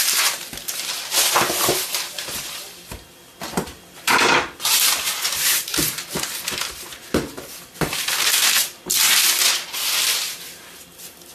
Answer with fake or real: fake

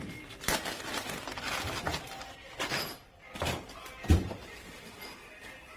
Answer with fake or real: real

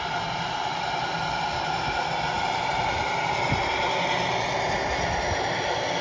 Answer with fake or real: real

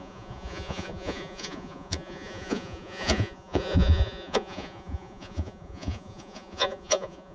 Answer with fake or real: fake